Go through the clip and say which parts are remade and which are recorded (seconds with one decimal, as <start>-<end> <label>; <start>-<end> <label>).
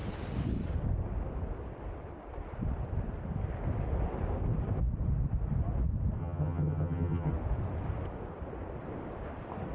0.0-6.2 recorded; 6.2-7.3 remade; 7.3-9.7 recorded